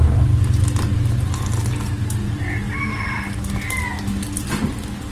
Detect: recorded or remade recorded